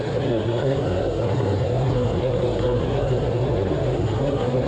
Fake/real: fake